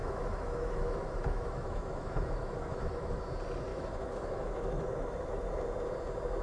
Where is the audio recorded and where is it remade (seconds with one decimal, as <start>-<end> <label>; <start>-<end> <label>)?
0.0-3.2 remade; 3.2-3.7 recorded; 3.7-5.5 remade; 5.5-6.4 recorded